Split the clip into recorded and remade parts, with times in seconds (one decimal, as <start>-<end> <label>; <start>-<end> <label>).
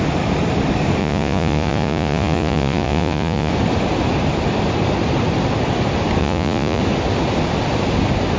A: 0.0-1.0 recorded; 1.0-3.5 remade; 3.5-6.2 recorded; 6.2-6.8 remade; 6.8-8.4 recorded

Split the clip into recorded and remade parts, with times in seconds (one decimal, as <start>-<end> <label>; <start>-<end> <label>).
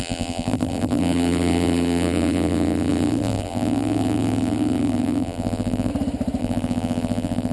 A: 0.0-5.9 remade; 5.9-6.4 recorded; 6.4-7.5 remade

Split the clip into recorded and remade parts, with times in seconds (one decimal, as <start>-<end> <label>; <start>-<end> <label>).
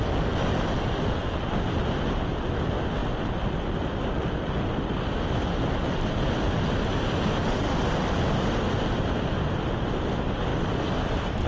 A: 0.0-7.4 recorded; 7.4-9.7 remade; 9.7-10.5 recorded; 10.5-11.5 remade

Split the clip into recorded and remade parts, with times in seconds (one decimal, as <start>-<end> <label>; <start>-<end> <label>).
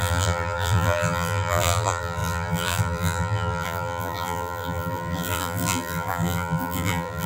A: 0.0-7.3 remade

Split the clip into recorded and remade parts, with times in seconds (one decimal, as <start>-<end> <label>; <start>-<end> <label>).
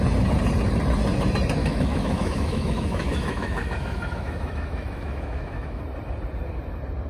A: 0.0-1.6 recorded; 1.6-5.8 remade; 5.8-7.1 recorded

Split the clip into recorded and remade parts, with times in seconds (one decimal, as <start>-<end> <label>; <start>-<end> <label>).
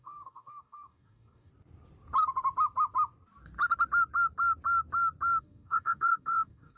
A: 0.0-1.5 remade; 1.5-5.4 recorded; 5.4-6.8 remade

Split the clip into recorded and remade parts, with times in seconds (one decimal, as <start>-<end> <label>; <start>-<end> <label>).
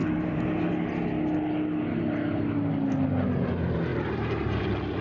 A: 0.0-0.7 remade; 0.7-3.9 recorded; 3.9-4.6 remade; 4.6-5.0 recorded